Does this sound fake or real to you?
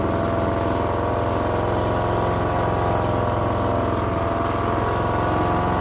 real